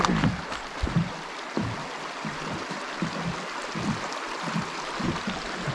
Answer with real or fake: real